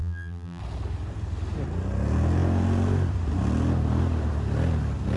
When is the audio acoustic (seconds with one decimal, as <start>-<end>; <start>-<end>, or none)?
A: 0.6-5.2